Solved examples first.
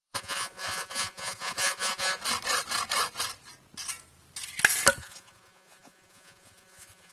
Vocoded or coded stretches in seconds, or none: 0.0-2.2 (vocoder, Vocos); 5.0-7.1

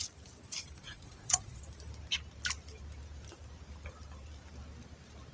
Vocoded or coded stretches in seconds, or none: 0.8-1.6 (vocoder, Vocos)

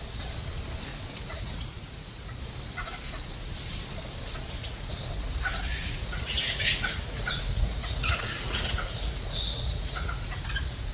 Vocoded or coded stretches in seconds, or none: 0.9-2.4 (vocoder, Vocos); 4.6-5.3; 5.7-10.9

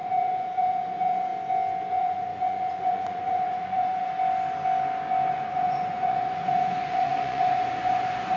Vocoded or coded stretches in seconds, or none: 0.0-1.3 (vocoder, Vocos); 1.9-4.1; 5.3-8.4

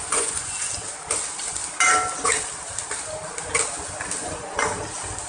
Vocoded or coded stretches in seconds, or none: 0.0-0.7 (vocoder, Vocos); 4.2-4.7

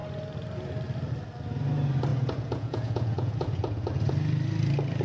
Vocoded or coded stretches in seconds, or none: 2.1-4.1 (vocoder, Vocos)

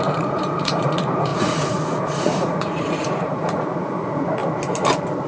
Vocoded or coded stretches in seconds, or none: 0.0-4.4 (vocoder, Vocos)